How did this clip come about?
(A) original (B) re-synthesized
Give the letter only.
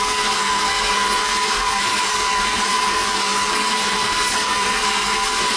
B